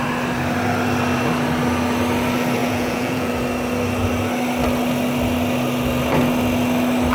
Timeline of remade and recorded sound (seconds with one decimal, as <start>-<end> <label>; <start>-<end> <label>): 0.0-2.6 recorded; 2.6-3.3 remade; 3.3-7.1 recorded